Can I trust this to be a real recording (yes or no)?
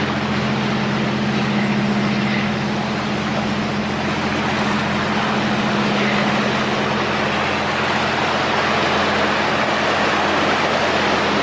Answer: yes